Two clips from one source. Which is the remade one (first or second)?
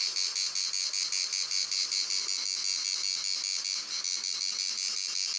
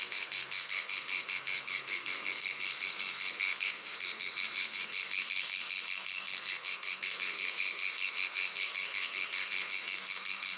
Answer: second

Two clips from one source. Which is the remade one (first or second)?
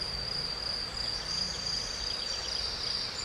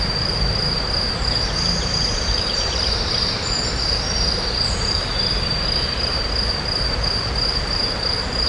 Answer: second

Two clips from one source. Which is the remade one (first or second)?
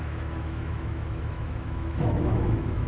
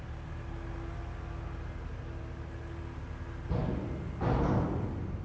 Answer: first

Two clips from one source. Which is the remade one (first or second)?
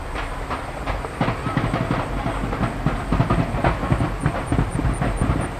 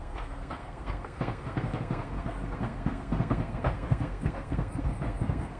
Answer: second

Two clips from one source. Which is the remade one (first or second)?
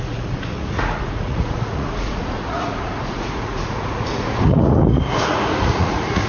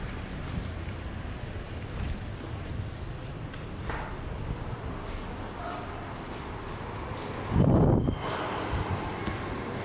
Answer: first